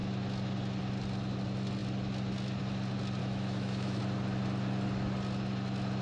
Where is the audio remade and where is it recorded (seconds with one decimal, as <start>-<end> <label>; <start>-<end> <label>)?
0.0-3.2 recorded; 3.2-4.0 remade; 4.0-6.0 recorded